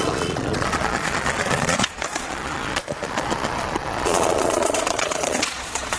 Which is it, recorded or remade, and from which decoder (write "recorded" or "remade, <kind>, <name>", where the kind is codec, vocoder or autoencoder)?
remade, vocoder, Vocos